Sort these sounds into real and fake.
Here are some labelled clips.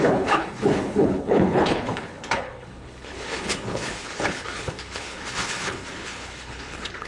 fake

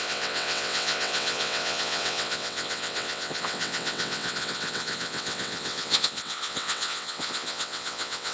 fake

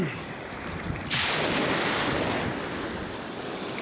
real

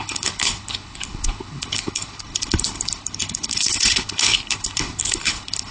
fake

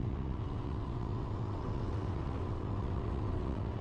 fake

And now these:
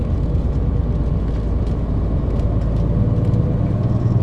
real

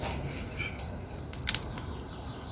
real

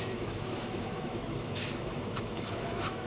fake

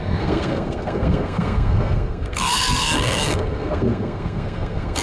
fake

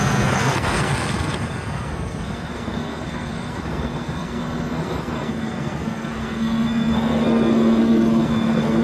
fake